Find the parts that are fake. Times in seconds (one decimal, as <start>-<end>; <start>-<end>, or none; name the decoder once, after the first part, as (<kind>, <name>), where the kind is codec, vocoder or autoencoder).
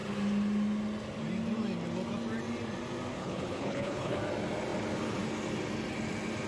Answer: 3.2-4.2 (codec, HILCodec)